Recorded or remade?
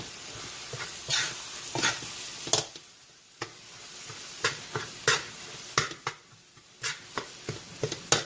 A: recorded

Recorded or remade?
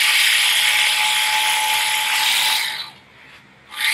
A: recorded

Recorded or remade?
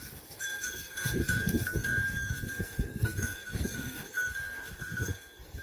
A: remade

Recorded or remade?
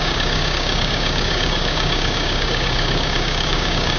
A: remade